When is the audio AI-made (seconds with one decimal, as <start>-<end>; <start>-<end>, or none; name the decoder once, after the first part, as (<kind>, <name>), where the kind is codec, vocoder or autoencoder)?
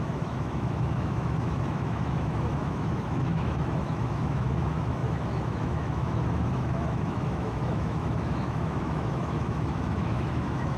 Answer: 0.0-10.8 (autoencoder, DAC-VAE)